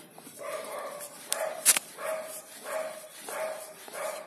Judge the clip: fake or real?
real